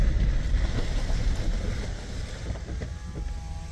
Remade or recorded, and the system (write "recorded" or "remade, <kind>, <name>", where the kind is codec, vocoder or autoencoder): recorded